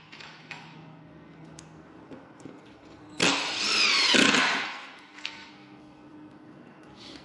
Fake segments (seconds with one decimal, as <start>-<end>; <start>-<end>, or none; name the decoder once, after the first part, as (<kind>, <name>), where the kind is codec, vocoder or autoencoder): 0.0-3.2 (codec, SNAC); 4.6-7.2